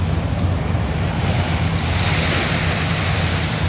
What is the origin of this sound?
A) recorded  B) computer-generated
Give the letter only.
A